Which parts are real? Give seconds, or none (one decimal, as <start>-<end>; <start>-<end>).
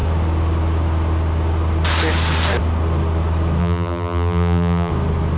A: 0.0-3.6; 4.9-5.4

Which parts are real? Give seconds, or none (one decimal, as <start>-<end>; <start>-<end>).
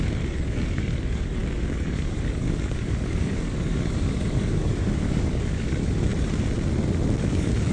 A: 6.1-7.2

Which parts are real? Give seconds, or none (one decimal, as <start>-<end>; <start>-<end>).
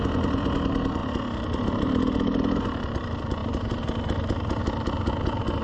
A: 0.0-5.6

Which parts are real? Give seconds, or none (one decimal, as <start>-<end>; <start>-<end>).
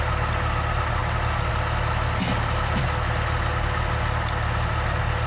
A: 0.0-5.3